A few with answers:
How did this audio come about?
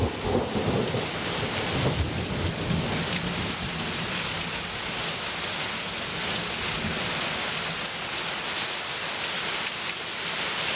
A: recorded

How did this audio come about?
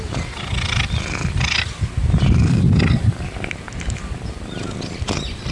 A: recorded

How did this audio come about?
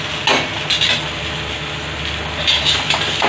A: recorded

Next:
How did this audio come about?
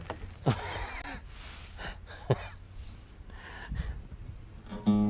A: recorded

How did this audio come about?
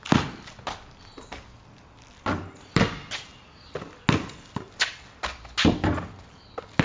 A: recorded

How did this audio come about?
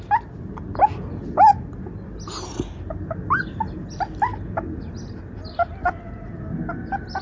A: recorded